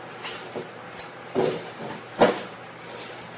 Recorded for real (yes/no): no